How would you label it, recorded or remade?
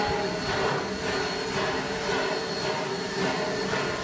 recorded